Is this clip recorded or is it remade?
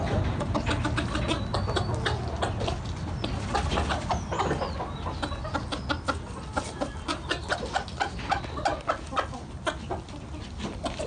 recorded